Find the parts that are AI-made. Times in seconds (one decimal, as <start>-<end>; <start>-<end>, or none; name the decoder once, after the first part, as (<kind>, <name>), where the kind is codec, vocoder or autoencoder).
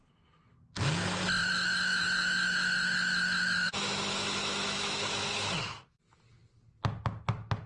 1.4-6.0 (autoencoder, DAC-VAE)